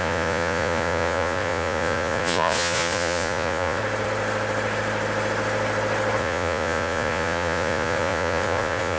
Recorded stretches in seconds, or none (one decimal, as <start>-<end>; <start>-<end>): 3.8-6.2